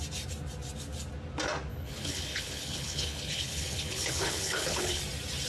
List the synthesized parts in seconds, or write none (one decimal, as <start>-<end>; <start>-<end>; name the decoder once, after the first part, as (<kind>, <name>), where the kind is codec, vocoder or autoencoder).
1.7-5.0 (codec, HILCodec)